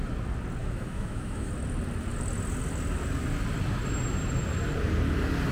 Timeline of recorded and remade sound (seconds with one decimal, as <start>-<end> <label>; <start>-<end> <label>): 0.0-0.6 recorded; 0.6-1.5 remade; 1.5-5.5 recorded